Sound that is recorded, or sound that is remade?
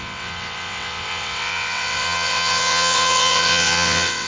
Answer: remade